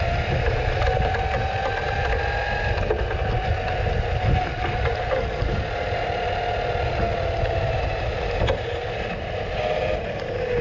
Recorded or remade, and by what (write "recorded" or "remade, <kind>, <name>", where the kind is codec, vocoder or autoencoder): recorded